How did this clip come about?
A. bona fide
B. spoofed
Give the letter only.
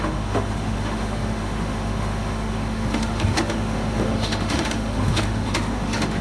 B